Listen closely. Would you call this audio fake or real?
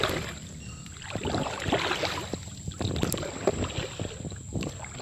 real